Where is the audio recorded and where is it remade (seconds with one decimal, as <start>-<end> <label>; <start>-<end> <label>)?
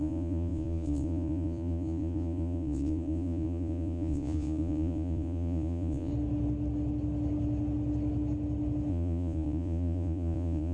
0.0-6.1 remade; 6.1-8.9 recorded; 8.9-10.7 remade